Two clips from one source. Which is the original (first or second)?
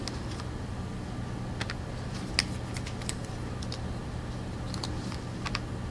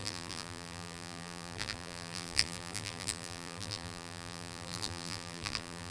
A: first